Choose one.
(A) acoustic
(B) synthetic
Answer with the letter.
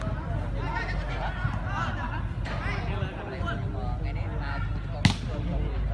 A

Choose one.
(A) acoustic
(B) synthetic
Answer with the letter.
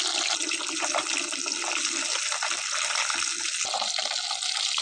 A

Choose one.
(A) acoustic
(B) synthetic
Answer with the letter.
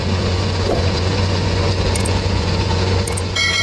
B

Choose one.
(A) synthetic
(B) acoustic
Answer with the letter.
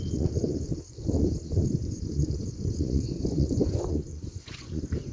A